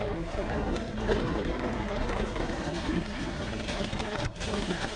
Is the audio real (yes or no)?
no